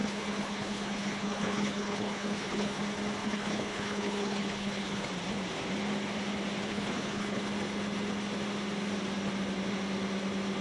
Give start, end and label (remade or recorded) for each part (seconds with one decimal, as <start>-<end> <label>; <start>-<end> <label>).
0.0-2.8 remade; 2.8-3.2 recorded; 3.2-5.1 remade; 5.1-6.7 recorded; 6.7-7.4 remade; 7.4-10.6 recorded